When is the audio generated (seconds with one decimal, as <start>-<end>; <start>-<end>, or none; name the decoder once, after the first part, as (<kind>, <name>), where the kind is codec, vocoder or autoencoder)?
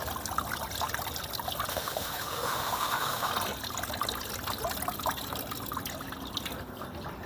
1.7-3.3 (autoencoder, DAC-VAE)